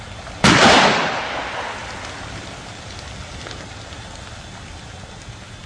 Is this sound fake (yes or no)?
no